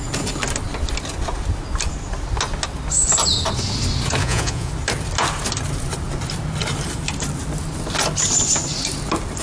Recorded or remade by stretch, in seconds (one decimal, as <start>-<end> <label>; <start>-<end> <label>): 0.0-4.2 recorded; 4.2-4.7 remade; 4.7-9.4 recorded